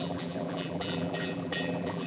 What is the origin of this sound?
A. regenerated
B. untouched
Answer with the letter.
A